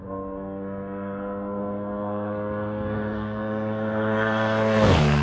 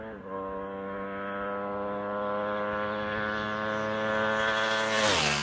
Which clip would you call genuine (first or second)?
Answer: second